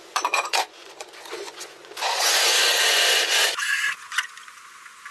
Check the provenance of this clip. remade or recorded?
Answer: remade